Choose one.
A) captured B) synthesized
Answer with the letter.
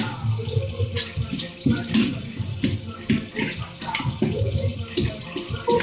A